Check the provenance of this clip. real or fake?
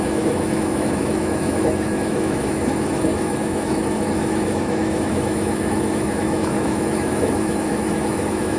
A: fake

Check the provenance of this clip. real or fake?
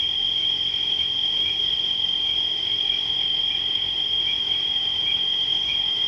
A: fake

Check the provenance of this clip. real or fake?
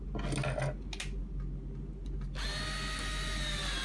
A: real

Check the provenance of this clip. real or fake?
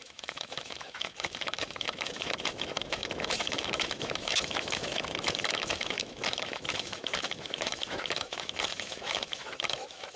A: fake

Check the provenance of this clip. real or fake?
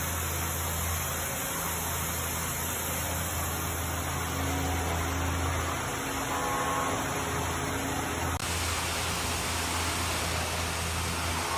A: real